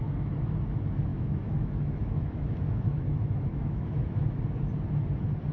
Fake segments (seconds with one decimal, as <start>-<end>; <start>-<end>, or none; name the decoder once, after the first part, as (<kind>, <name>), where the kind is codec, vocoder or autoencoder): 1.1-4.4 (autoencoder, DAC-VAE)